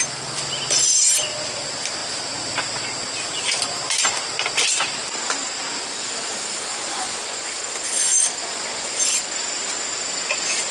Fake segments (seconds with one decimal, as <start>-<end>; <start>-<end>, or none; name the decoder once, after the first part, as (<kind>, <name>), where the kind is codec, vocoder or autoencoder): 6.7-7.5 (vocoder, Vocos); 8.4-9.0